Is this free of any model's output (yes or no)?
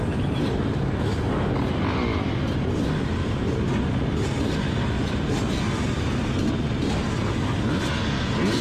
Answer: yes